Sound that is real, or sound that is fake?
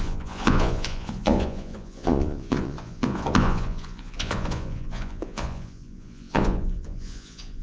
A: fake